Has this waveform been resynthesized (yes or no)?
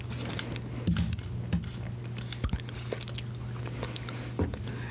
no